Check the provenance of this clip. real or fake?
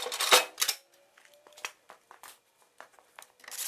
real